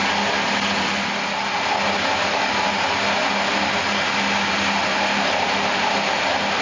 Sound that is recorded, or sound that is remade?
recorded